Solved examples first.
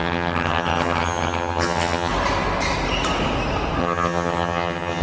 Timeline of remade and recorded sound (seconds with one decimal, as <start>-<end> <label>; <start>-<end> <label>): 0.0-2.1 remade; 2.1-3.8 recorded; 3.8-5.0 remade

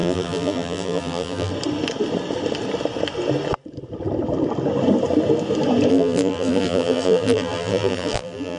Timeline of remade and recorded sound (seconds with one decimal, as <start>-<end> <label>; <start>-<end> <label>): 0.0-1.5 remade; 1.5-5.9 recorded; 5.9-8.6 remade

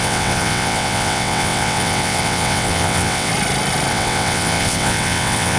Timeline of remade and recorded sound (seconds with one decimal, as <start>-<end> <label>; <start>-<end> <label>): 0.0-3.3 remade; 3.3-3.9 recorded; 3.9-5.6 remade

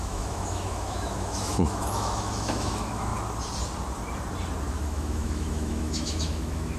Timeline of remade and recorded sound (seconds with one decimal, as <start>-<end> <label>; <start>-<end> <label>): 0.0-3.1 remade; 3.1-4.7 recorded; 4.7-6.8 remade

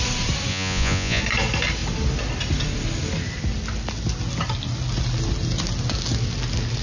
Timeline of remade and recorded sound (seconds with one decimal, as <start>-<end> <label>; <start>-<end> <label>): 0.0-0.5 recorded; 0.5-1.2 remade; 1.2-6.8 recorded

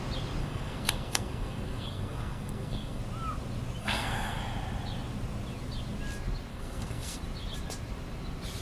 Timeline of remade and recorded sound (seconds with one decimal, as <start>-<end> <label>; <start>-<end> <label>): 0.0-0.4 recorded; 0.4-3.0 remade; 3.0-3.8 recorded; 3.8-4.4 remade; 4.4-6.5 recorded; 6.5-7.2 remade; 7.2-8.6 recorded

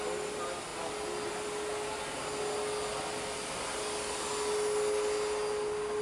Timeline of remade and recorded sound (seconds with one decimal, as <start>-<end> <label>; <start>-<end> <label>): 0.0-6.0 recorded

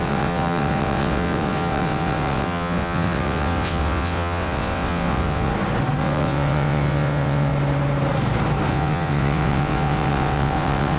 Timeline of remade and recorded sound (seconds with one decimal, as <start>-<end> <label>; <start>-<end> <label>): 0.0-5.5 remade; 5.5-6.0 recorded; 6.0-7.5 remade; 7.5-8.7 recorded; 8.7-11.0 remade